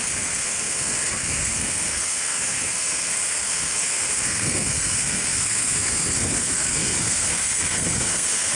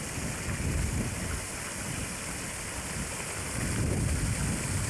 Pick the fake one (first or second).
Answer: first